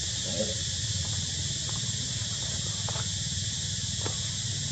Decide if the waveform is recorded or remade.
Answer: recorded